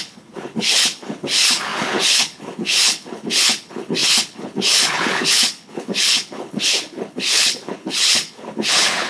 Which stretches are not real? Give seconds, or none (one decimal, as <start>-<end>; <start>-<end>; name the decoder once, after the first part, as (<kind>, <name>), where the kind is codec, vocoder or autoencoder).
0.0-9.1 (codec, HILCodec)